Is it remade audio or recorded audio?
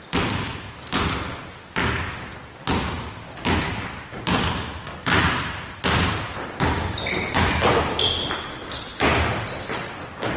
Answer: recorded